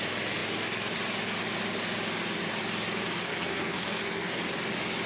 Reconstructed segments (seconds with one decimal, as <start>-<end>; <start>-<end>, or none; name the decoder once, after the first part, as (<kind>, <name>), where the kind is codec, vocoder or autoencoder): 3.3-4.4 (codec, SNAC)